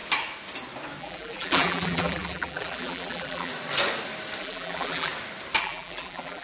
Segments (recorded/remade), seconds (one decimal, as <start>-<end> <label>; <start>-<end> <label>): 0.0-1.0 recorded; 1.0-3.5 remade; 3.5-4.4 recorded; 4.4-5.1 remade; 5.1-5.6 recorded; 5.6-6.4 remade